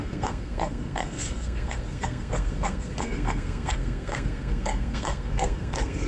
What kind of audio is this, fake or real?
fake